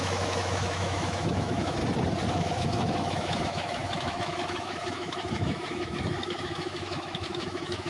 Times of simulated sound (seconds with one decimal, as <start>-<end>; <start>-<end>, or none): 0.0-1.8; 2.3-7.9